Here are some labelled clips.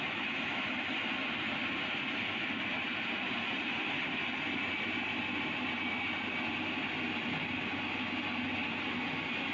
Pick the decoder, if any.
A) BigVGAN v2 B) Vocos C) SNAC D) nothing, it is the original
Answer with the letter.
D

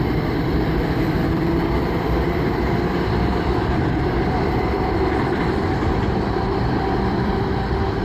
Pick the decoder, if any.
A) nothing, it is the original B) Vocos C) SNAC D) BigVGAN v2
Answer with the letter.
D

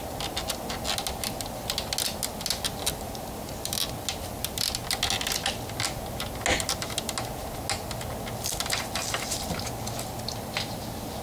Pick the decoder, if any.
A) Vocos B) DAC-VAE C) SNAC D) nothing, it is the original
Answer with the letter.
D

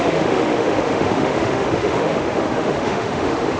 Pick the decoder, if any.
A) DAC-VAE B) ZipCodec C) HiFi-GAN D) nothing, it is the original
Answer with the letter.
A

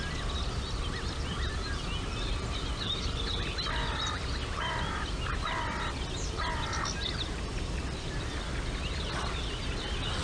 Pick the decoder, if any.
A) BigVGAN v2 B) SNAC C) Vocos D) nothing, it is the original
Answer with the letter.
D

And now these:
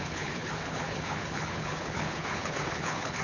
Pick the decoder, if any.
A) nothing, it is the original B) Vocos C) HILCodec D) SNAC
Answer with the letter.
C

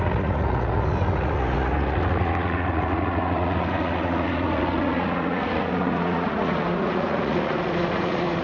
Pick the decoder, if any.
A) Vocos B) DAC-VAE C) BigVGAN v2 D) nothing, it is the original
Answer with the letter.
A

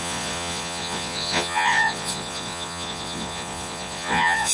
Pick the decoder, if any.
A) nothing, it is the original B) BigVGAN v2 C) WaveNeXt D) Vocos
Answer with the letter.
D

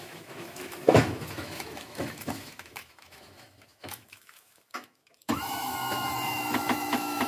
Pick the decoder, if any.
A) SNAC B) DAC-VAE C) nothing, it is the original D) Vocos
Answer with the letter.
B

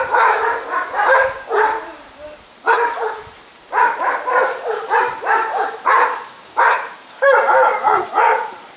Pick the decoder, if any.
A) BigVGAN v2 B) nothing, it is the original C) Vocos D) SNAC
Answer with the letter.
A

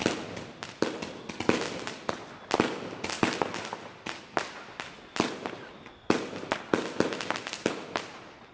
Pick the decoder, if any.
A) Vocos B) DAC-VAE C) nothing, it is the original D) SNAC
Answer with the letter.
C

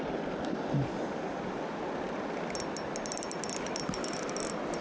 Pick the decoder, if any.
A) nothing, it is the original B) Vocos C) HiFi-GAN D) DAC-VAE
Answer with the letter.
A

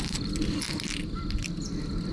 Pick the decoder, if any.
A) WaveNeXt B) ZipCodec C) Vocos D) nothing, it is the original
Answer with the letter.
D